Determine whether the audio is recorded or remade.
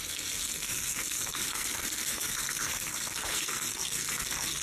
remade